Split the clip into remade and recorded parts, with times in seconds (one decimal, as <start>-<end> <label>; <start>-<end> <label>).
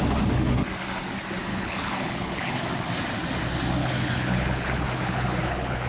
0.0-1.5 recorded; 1.5-2.5 remade; 2.5-3.8 recorded; 3.8-5.9 remade